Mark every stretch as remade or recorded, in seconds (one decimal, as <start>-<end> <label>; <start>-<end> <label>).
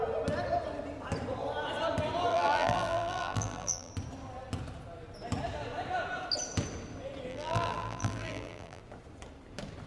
0.0-2.3 recorded; 2.3-3.9 remade; 3.9-7.3 recorded; 7.3-8.8 remade; 8.8-9.9 recorded